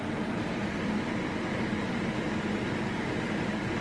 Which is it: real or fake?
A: fake